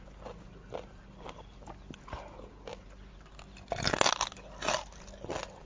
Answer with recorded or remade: recorded